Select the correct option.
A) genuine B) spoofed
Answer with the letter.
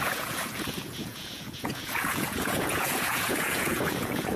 B